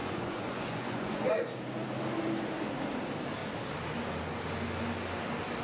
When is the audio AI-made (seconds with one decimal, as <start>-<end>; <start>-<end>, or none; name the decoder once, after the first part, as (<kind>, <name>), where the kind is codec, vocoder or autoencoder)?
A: 0.0-1.3 (vocoder, Vocos)